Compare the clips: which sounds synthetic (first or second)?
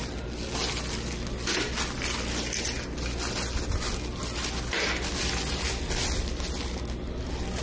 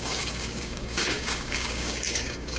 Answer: second